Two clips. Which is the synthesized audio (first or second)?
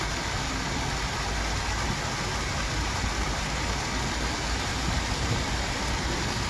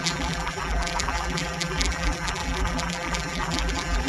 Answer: second